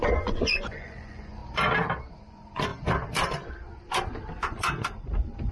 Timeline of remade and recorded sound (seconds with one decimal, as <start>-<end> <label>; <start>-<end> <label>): 0.0-1.4 remade; 1.4-2.1 recorded; 2.1-2.7 remade; 2.7-5.5 recorded